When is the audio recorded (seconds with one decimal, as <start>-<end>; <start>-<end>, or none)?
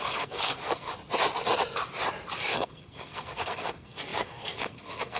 0.9-2.5